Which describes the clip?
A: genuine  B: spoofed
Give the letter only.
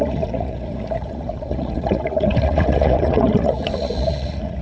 B